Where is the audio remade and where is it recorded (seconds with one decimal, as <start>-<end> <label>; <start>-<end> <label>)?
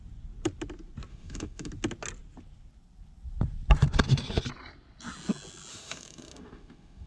0.0-1.1 recorded; 1.1-1.7 remade; 1.7-5.7 recorded; 5.7-7.1 remade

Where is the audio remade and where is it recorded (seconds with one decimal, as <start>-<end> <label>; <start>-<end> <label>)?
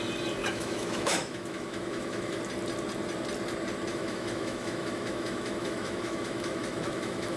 0.0-0.4 recorded; 0.4-2.4 remade; 2.4-3.9 recorded; 3.9-7.4 remade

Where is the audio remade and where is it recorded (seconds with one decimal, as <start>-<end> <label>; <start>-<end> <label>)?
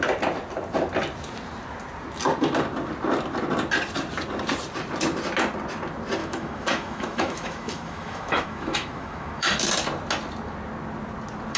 0.0-6.2 recorded; 6.2-9.5 remade; 9.5-11.6 recorded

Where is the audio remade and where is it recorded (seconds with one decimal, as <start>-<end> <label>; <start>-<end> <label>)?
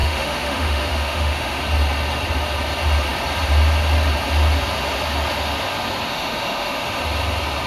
0.0-1.6 remade; 1.6-6.1 recorded; 6.1-7.0 remade; 7.0-7.7 recorded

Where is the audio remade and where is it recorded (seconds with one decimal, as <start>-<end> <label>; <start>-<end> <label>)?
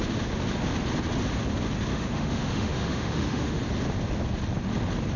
0.0-1.9 recorded; 1.9-3.6 remade; 3.6-5.2 recorded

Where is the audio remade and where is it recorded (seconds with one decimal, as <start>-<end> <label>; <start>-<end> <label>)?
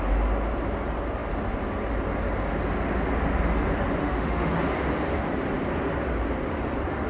0.0-4.0 recorded; 4.0-4.5 remade; 4.5-7.1 recorded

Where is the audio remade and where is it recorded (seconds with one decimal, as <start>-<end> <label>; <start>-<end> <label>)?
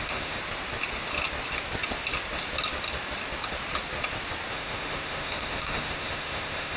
0.0-0.4 remade; 0.4-4.5 recorded; 4.5-6.8 remade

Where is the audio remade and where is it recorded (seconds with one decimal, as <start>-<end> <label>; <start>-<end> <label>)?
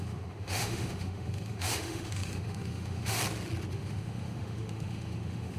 0.0-3.2 remade; 3.2-3.7 recorded; 3.7-5.6 remade